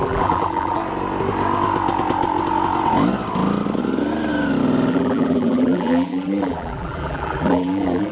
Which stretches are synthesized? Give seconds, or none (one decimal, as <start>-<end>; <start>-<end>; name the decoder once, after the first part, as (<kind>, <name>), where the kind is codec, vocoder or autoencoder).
0.0-0.8 (vocoder, BigVGAN v2); 4.9-8.1